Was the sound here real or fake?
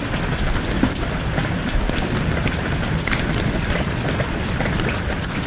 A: real